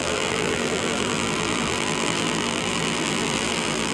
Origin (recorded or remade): remade